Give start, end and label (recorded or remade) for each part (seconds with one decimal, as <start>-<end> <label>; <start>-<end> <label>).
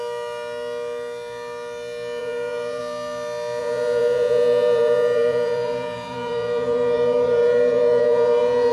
0.0-2.2 recorded; 2.2-2.8 remade; 2.8-3.6 recorded; 3.6-8.7 remade